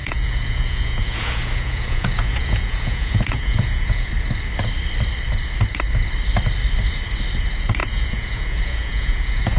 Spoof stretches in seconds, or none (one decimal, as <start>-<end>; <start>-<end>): 0.0-4.1; 7.8-9.6